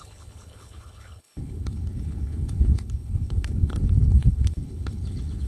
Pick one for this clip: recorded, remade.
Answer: remade